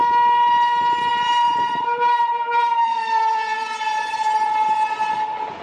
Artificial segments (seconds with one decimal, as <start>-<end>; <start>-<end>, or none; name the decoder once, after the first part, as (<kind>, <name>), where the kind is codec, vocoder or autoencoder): 1.1-4.5 (vocoder, BigVGAN v2)